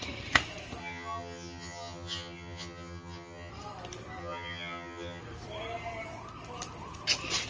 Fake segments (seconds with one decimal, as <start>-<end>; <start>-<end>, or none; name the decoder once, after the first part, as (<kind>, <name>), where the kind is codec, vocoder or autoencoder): 0.8-3.5 (vocoder, HiFi-GAN); 4.2-5.2